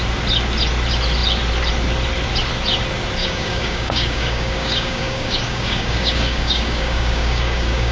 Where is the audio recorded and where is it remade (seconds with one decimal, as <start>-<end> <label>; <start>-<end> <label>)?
0.0-3.2 recorded; 3.2-7.9 remade